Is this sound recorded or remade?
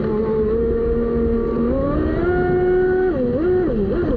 recorded